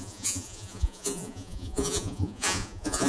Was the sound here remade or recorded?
remade